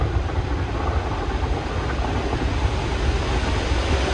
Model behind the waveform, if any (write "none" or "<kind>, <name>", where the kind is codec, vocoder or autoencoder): none